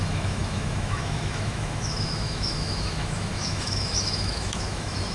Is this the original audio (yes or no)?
no